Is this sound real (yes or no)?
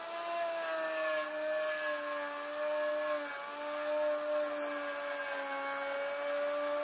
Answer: yes